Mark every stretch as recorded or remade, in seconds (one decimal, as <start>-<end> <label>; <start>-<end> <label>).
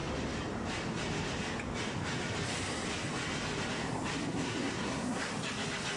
0.0-4.3 recorded; 4.3-5.3 remade; 5.3-6.0 recorded